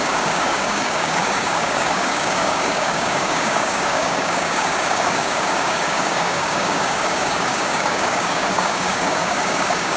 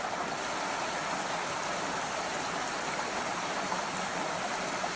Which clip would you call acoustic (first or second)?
second